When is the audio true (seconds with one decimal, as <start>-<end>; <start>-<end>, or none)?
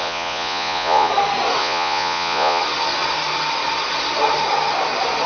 1.1-1.6; 2.6-5.3